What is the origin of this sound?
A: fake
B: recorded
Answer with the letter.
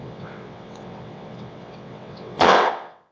A